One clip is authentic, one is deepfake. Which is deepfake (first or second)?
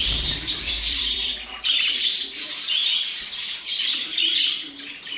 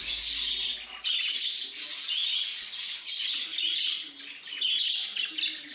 first